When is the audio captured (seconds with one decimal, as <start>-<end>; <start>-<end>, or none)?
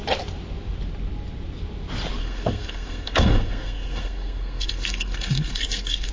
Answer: 0.0-2.2